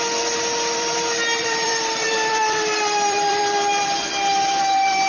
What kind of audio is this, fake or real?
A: fake